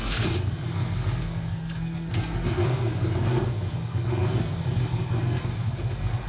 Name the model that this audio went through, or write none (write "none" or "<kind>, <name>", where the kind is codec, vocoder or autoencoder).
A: codec, SNAC